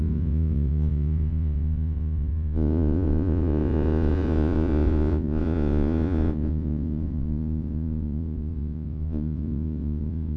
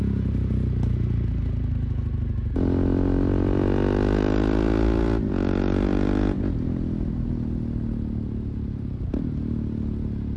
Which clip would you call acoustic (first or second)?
second